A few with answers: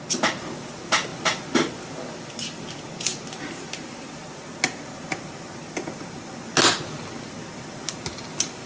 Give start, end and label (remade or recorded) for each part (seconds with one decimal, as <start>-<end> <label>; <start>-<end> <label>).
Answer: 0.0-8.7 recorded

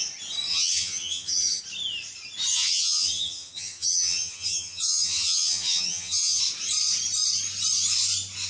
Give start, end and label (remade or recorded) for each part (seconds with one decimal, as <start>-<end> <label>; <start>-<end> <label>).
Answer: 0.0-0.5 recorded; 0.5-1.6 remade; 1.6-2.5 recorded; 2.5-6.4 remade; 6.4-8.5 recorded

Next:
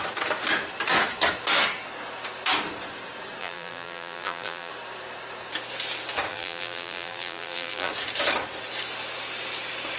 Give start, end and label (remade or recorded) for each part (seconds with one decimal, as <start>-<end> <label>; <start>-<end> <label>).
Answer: 0.0-3.4 recorded; 3.4-4.7 remade; 4.7-6.3 recorded; 6.3-7.9 remade; 7.9-10.0 recorded

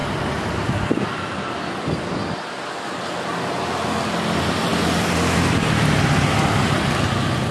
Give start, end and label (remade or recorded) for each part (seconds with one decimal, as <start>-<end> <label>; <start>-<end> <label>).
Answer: 0.0-1.4 remade; 1.4-7.5 recorded

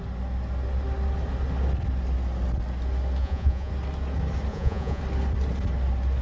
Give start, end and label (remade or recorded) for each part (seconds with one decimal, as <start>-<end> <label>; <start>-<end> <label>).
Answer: 0.0-3.2 recorded; 3.2-3.7 remade; 3.7-4.5 recorded; 4.5-5.0 remade; 5.0-6.2 recorded

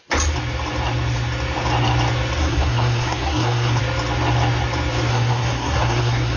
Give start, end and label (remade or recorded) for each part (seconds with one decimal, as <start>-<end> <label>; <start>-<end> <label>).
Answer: 0.0-2.4 recorded; 2.4-3.8 remade; 3.8-5.1 recorded; 5.1-6.4 remade